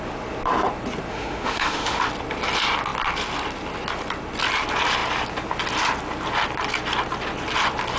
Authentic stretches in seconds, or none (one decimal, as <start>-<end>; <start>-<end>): 0.0-1.1; 2.0-8.0